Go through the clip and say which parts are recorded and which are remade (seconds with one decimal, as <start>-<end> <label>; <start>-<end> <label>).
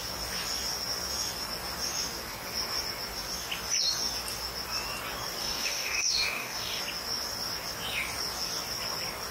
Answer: 0.0-5.4 recorded; 5.4-6.8 remade; 6.8-9.3 recorded